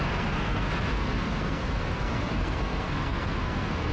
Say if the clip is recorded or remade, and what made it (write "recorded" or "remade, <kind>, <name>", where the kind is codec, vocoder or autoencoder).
remade, codec, SNAC